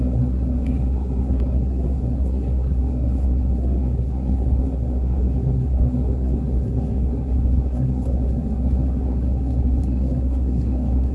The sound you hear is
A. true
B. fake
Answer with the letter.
B